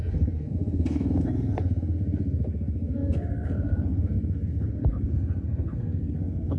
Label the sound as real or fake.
fake